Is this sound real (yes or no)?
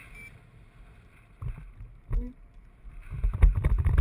no